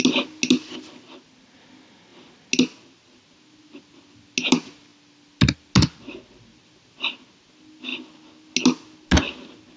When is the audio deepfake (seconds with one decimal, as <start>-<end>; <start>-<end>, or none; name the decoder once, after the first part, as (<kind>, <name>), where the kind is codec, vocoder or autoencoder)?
none